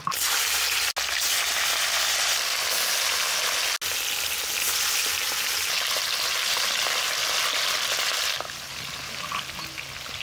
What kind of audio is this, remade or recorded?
recorded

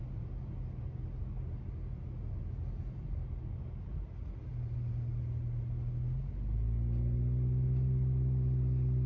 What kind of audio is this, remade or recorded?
recorded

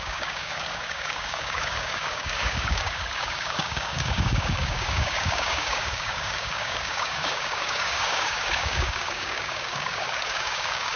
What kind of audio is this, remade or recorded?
remade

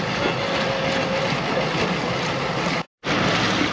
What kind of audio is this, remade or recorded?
recorded